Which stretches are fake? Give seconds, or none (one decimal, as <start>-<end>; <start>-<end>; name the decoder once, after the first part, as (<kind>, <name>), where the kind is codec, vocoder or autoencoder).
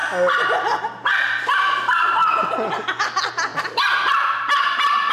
3.5-5.1 (vocoder, BigVGAN v2)